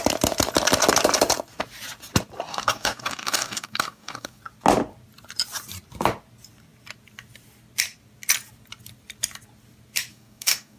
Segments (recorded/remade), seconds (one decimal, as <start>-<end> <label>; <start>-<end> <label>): 0.0-2.5 recorded; 2.5-4.4 remade; 4.4-10.1 recorded; 10.1-10.8 remade